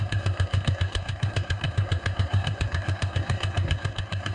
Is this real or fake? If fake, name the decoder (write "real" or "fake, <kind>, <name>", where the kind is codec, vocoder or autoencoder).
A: fake, codec, SNAC